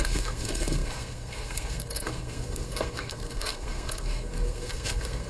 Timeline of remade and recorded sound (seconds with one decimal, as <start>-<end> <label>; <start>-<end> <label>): 0.0-5.3 remade